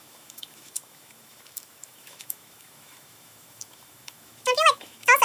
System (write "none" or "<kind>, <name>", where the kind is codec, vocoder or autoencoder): autoencoder, DAC-VAE